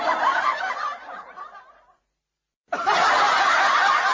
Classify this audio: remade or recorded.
recorded